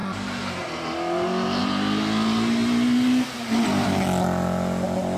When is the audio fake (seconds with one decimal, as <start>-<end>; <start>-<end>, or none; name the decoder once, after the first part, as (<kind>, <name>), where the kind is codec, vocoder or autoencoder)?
none